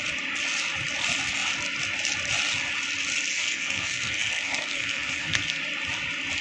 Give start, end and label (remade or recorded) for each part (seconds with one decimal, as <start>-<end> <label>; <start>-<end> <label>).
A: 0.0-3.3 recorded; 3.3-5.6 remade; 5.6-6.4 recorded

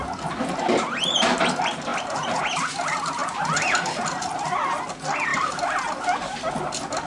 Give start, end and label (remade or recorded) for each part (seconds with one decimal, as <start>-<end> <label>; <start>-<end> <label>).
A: 0.0-7.1 recorded

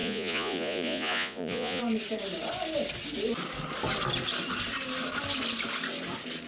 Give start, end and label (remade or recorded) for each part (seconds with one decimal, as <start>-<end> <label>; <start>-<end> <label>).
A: 0.0-1.8 remade; 1.8-6.5 recorded

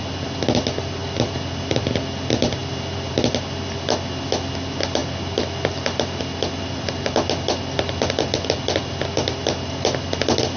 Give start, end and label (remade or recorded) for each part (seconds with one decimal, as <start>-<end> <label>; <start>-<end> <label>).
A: 0.0-10.6 recorded